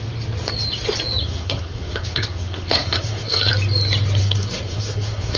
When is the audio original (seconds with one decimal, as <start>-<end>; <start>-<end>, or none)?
0.0-1.2; 3.5-4.2